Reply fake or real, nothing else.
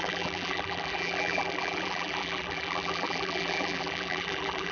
fake